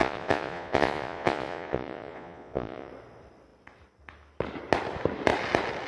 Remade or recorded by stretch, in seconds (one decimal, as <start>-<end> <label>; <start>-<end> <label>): 0.0-2.9 remade; 2.9-5.9 recorded